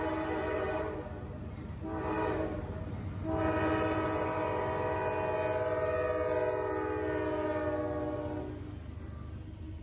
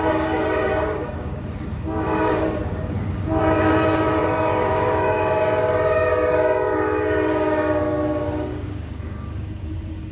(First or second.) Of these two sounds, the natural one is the first